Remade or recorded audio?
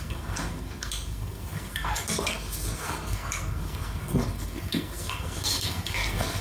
remade